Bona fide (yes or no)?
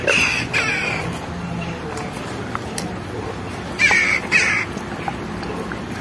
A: yes